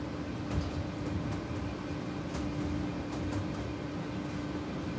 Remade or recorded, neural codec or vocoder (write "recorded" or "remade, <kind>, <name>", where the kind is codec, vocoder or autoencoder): recorded